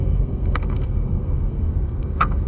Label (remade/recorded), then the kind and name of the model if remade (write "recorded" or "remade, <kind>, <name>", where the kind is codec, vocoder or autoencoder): remade, codec, SNAC